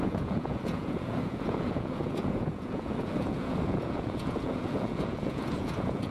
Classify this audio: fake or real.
fake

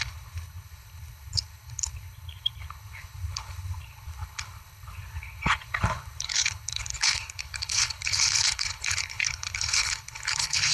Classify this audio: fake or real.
fake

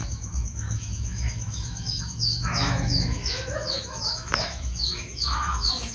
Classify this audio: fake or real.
fake